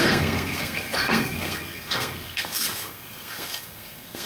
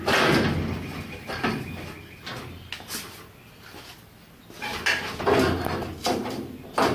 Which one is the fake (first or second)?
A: first